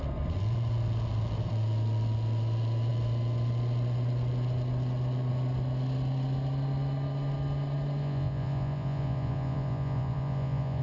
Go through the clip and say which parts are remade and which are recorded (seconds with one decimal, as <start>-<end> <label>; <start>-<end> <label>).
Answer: 0.0-8.0 recorded; 8.0-10.8 remade